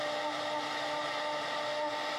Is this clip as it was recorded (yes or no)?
yes